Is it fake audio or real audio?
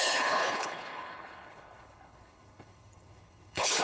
fake